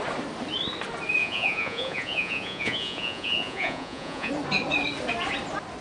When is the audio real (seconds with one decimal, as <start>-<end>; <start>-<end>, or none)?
0.0-1.2; 4.3-5.8